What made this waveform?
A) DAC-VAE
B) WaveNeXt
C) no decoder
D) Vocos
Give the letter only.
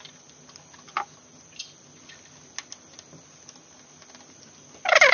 C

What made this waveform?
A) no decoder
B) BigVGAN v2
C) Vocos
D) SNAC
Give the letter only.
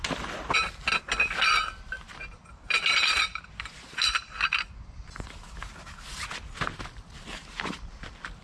A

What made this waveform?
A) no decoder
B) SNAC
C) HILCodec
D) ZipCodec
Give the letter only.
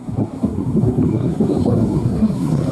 B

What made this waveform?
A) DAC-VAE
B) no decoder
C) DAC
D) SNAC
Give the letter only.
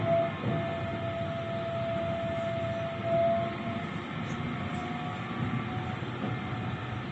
B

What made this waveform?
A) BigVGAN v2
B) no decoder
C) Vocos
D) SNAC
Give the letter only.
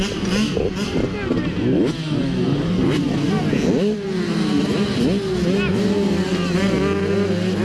B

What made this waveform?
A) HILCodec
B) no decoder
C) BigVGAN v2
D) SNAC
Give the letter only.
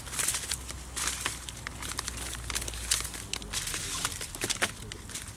B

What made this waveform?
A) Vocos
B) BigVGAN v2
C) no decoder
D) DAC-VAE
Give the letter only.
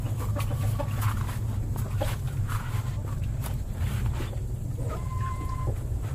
C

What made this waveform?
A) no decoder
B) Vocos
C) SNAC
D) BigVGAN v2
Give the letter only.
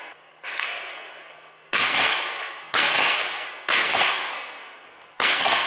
C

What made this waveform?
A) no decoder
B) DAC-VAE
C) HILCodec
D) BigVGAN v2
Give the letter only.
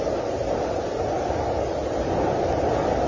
A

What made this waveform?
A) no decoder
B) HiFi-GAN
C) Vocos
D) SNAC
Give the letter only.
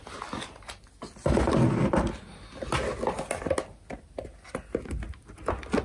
A